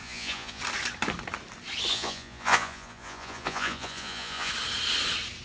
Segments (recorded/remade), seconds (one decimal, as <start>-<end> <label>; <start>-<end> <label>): 0.0-0.6 remade; 0.6-1.9 recorded; 1.9-4.5 remade; 4.5-5.4 recorded